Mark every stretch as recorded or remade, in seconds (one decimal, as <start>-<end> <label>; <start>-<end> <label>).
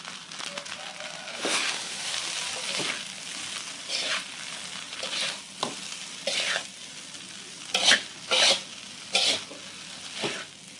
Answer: 0.0-1.3 recorded; 1.3-2.1 remade; 2.1-10.8 recorded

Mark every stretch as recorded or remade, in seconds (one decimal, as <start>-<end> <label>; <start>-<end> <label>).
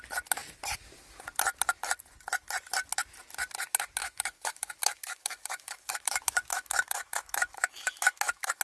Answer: 0.0-4.0 recorded; 4.0-8.6 remade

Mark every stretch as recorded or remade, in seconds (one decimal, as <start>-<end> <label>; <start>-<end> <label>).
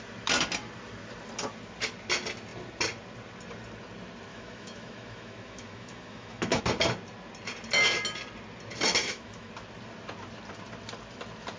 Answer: 0.0-4.3 recorded; 4.3-6.6 remade; 6.6-9.0 recorded; 9.0-9.5 remade; 9.5-11.6 recorded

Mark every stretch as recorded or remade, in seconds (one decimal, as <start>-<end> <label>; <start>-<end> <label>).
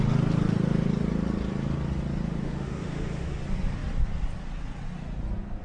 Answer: 0.0-2.3 recorded; 2.3-3.4 remade; 3.4-5.6 recorded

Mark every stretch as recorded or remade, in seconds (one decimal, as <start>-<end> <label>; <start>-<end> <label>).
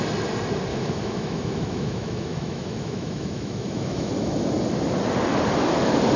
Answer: 0.0-0.7 recorded; 0.7-4.1 remade; 4.1-6.2 recorded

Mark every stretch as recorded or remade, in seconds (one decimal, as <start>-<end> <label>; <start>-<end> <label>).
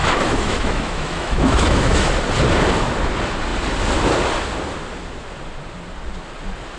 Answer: 0.0-2.1 remade; 2.1-6.8 recorded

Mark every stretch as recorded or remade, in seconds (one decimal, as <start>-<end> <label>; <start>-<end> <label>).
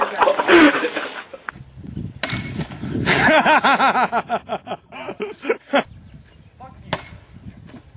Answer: 0.0-8.0 recorded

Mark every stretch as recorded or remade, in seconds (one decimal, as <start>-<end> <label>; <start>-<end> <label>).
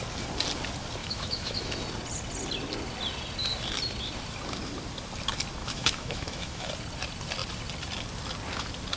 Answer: 0.0-1.0 recorded; 1.0-1.8 remade; 1.8-5.6 recorded; 5.6-6.7 remade; 6.7-9.0 recorded